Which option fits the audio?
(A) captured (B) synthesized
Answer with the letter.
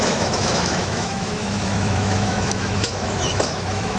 B